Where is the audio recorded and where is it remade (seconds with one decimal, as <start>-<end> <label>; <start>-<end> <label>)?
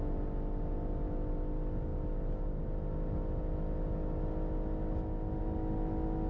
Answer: 0.0-6.3 recorded